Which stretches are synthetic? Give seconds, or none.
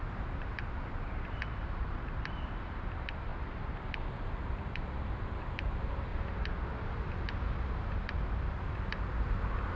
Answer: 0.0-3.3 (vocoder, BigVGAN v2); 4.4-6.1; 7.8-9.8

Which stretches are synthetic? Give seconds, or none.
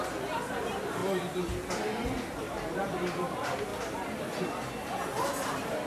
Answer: 0.0-1.0 (vocoder, BigVGAN v2); 2.4-3.7; 5.5-5.9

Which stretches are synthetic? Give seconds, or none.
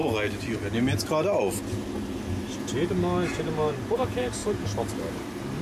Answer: 3.4-5.6 (vocoder, BigVGAN v2)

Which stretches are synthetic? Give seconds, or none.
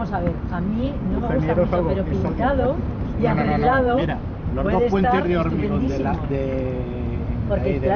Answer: 0.7-1.2 (vocoder, BigVGAN v2); 2.2-6.2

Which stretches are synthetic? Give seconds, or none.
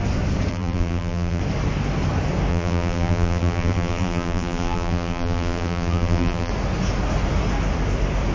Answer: 0.5-1.4 (vocoder, BigVGAN v2); 2.5-6.5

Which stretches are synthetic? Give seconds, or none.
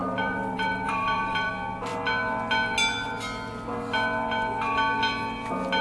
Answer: 0.0-1.5 (vocoder, BigVGAN v2)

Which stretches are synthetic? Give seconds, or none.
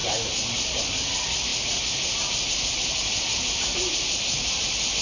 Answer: 0.8-1.5 (vocoder, BigVGAN v2); 4.5-5.0